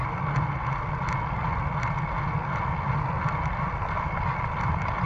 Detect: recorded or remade recorded